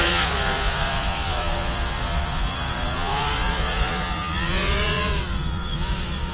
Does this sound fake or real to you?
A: fake